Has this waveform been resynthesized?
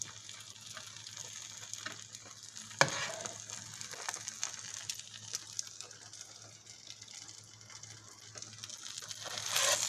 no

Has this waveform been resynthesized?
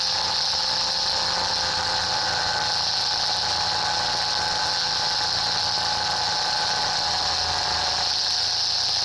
no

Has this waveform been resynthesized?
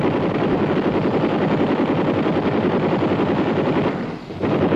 no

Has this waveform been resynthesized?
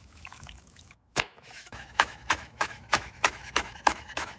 yes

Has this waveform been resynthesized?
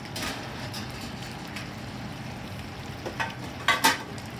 no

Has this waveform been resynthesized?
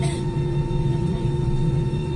yes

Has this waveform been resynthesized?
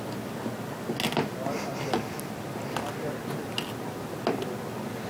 no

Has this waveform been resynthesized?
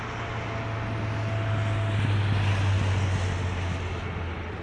no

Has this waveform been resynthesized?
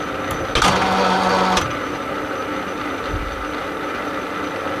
no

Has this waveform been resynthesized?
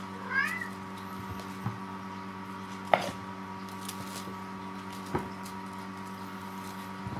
no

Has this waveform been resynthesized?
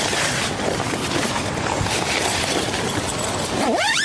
no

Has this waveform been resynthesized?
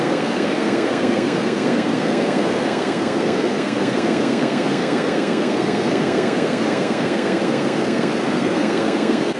yes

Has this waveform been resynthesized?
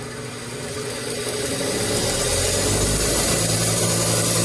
no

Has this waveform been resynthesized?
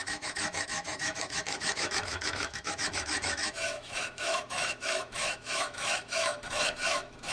yes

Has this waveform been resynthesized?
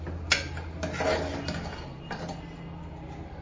no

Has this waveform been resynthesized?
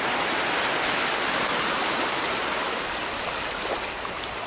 no